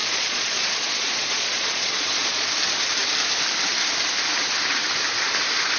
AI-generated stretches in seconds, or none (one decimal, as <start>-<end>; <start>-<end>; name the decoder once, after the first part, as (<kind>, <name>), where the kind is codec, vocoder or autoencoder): 0.0-2.5 (vocoder, Vocos)